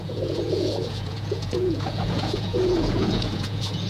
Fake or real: fake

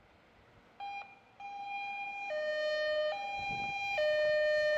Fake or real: real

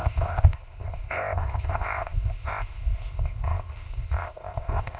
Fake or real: fake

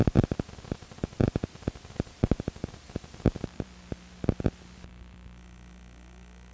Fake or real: real